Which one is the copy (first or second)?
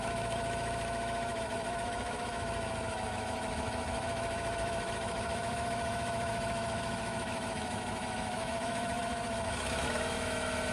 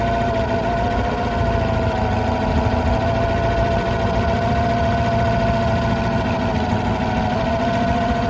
first